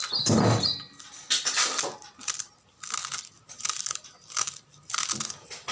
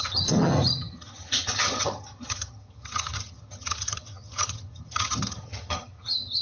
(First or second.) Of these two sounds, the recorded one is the first